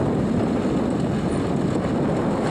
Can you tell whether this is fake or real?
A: real